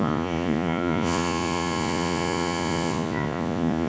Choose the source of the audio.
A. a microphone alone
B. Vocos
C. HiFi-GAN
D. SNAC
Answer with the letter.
B